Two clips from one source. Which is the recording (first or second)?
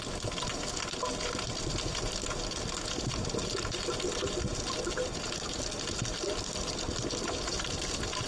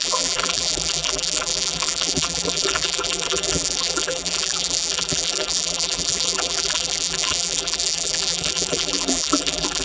first